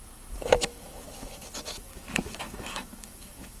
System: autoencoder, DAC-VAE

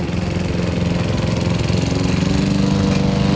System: none